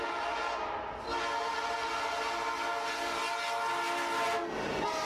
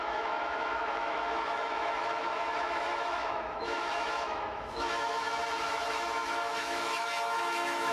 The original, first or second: first